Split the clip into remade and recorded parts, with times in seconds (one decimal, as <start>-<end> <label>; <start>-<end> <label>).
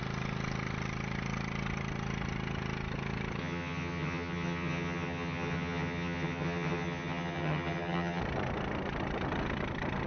0.0-3.4 recorded; 3.4-8.2 remade; 8.2-10.1 recorded